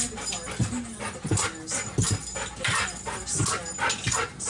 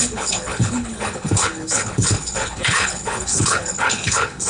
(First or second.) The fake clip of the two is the second